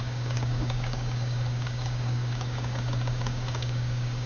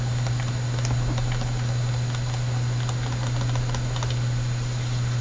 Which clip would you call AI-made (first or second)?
first